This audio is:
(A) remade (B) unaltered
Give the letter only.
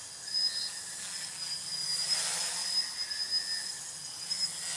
B